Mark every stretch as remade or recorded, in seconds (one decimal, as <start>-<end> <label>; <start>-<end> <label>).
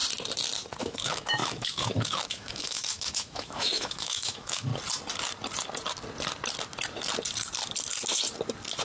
0.0-0.8 recorded; 0.8-4.7 remade; 4.7-8.8 recorded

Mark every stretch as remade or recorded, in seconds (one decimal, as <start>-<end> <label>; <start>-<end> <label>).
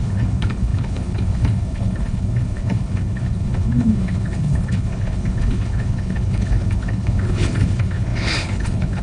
0.0-9.0 remade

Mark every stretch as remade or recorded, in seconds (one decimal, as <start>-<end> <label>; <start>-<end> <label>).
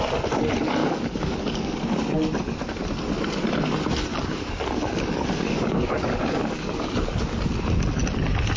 0.0-0.8 recorded; 0.8-1.8 remade; 1.8-4.1 recorded; 4.1-6.9 remade; 6.9-8.6 recorded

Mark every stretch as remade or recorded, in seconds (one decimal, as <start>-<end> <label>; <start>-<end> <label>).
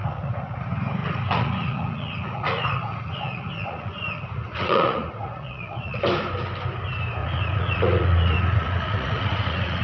0.0-0.6 remade; 0.6-1.0 recorded; 1.0-6.0 remade; 6.0-7.2 recorded; 7.2-9.8 remade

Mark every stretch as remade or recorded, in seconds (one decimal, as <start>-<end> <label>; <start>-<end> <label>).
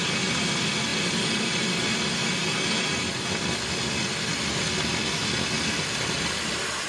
0.0-6.9 recorded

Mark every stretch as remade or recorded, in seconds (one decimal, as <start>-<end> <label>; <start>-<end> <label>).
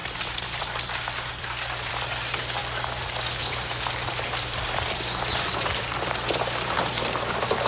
0.0-7.7 recorded